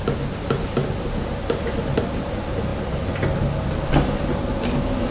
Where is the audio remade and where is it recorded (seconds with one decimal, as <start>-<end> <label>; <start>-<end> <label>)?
0.0-5.1 recorded